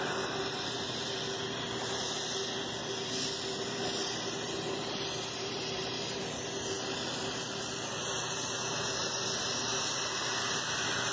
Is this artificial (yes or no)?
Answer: no